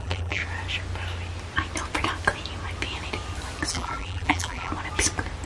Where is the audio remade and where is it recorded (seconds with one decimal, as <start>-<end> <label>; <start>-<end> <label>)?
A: 0.0-0.4 remade; 0.4-3.7 recorded; 3.7-4.7 remade; 4.7-5.5 recorded